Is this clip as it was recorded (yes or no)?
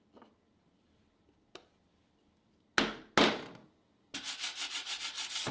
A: yes